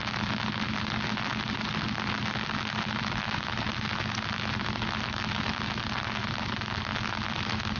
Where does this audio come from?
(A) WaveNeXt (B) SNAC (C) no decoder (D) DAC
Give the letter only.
C